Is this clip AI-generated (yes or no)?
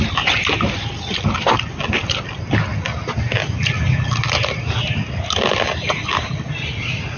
no